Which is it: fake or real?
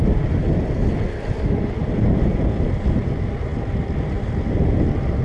real